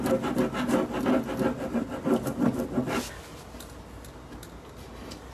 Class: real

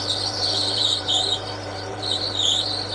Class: fake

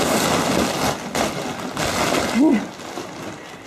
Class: real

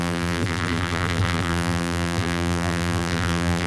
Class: fake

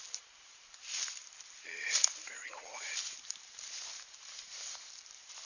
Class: fake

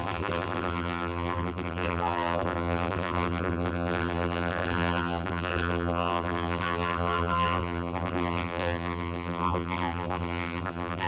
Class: fake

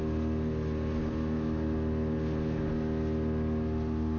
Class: real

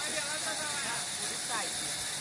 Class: fake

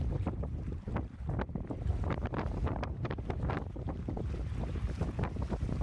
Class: fake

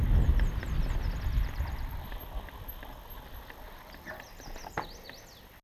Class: fake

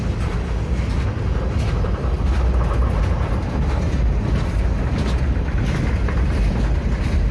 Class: real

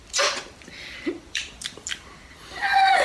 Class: fake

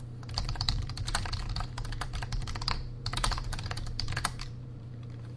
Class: fake